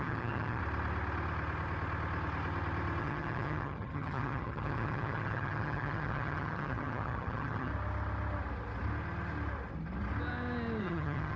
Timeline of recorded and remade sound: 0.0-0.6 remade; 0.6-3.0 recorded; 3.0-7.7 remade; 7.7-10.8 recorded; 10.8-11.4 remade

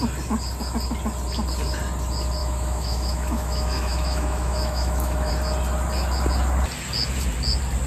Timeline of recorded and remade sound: 0.0-2.4 recorded; 2.4-5.3 remade; 5.3-7.9 recorded

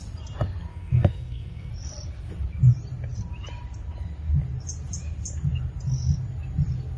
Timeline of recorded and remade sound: 0.0-0.7 recorded; 0.7-1.7 remade; 1.7-7.0 recorded

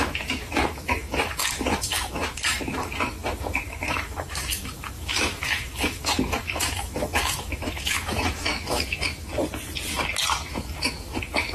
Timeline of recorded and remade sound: 0.0-9.3 remade; 9.3-10.5 recorded; 10.5-11.5 remade

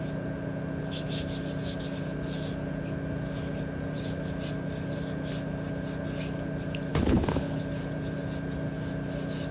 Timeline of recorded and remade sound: 0.0-6.9 recorded; 6.9-7.6 remade; 7.6-9.5 recorded

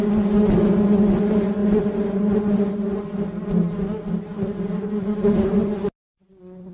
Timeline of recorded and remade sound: 0.0-6.7 recorded